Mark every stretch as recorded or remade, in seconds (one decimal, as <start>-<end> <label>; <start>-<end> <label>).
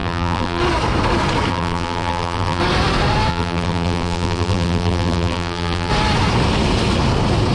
0.0-0.6 remade; 0.6-1.5 recorded; 1.5-2.6 remade; 2.6-3.3 recorded; 3.3-5.9 remade; 5.9-7.5 recorded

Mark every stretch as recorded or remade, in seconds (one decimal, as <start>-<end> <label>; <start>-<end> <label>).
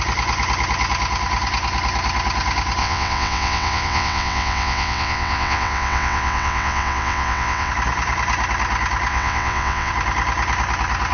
0.0-2.8 recorded; 2.8-7.7 remade; 7.7-9.1 recorded; 9.1-9.9 remade; 9.9-11.1 recorded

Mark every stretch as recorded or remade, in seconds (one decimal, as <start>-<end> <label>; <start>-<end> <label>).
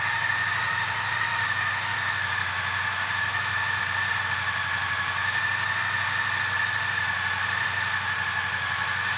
0.0-1.3 recorded; 1.3-3.8 remade; 3.8-9.2 recorded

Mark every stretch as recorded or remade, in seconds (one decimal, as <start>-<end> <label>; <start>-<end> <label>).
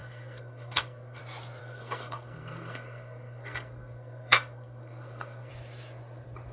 0.0-1.2 remade; 1.2-1.6 recorded; 1.6-5.5 remade; 5.5-6.5 recorded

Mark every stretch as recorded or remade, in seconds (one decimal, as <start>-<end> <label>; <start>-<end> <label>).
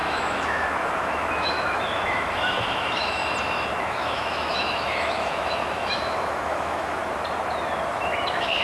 0.0-3.2 remade; 3.2-3.8 recorded; 3.8-7.0 remade; 7.0-7.9 recorded; 7.9-8.6 remade